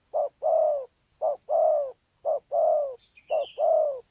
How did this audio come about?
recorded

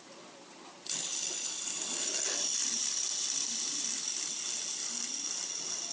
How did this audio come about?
recorded